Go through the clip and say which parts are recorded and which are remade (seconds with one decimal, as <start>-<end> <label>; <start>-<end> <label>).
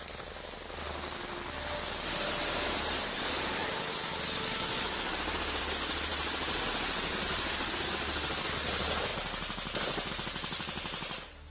0.0-11.5 recorded